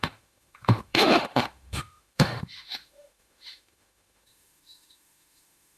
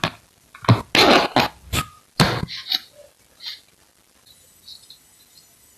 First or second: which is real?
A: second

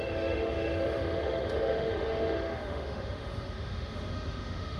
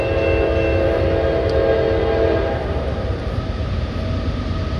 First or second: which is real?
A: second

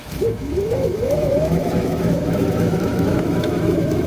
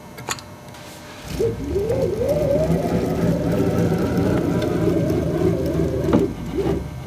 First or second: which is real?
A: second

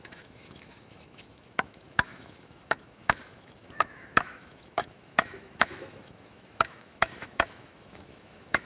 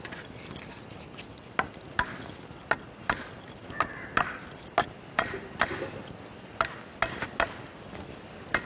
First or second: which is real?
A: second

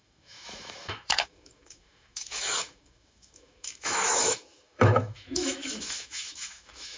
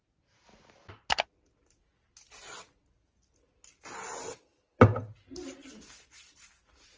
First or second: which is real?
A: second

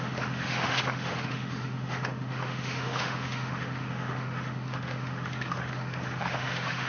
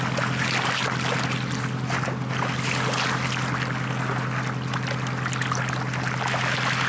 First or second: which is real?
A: second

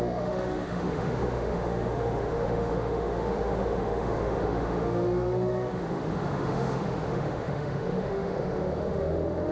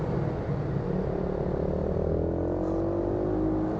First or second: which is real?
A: second